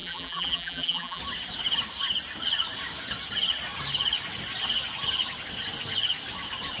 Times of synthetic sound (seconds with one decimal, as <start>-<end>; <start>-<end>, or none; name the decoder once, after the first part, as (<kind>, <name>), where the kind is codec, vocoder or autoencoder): 0.0-1.2 (vocoder, BigVGAN v2)